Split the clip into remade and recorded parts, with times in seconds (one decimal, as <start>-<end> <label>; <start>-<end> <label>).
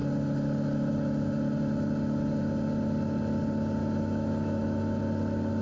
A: 0.0-3.8 recorded; 3.8-5.0 remade; 5.0-5.6 recorded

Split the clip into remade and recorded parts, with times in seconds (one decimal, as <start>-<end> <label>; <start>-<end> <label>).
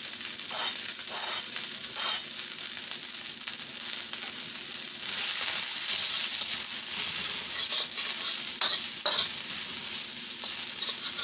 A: 0.0-11.2 recorded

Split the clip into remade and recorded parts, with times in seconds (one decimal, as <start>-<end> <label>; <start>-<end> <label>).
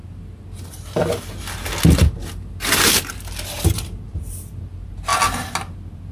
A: 0.0-6.1 recorded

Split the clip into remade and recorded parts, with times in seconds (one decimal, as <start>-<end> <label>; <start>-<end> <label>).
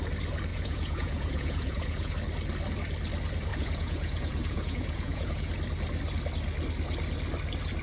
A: 0.0-0.5 recorded; 0.5-2.1 remade; 2.1-3.5 recorded; 3.5-5.5 remade; 5.5-7.8 recorded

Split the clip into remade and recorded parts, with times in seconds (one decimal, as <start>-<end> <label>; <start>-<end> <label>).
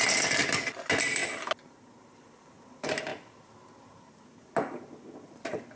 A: 0.0-5.8 recorded